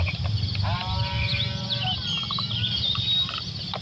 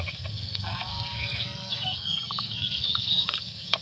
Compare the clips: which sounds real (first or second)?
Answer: first